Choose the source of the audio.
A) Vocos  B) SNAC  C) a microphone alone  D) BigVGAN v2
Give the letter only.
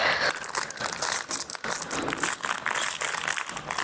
C